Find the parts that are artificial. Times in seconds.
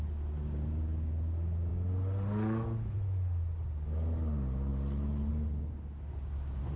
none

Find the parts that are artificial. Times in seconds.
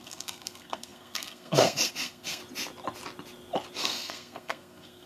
0.0-2.4; 3.8-5.1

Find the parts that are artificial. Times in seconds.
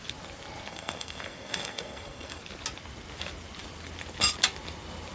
0.7-2.4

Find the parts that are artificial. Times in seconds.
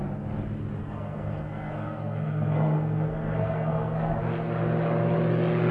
0.8-4.2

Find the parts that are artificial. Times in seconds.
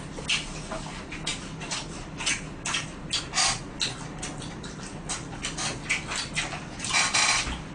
none